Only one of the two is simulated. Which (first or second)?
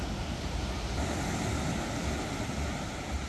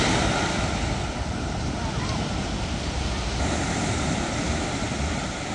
second